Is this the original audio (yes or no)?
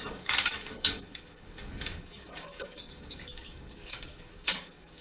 no